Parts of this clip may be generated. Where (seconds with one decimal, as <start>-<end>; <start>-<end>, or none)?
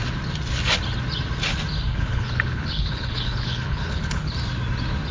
1.9-4.3